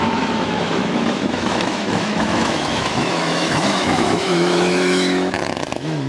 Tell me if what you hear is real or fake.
fake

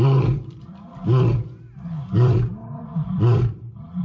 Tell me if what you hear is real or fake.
fake